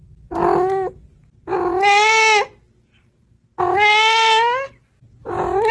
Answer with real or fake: real